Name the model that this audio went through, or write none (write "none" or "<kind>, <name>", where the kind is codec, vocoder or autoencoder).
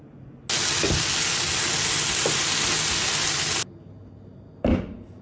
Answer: none